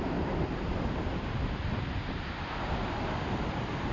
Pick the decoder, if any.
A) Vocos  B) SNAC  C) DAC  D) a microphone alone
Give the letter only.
D